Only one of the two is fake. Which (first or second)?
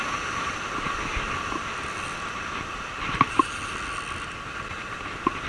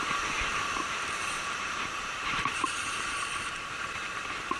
second